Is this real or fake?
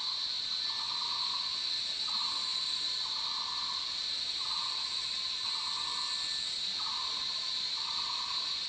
real